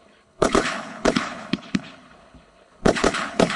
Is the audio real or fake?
fake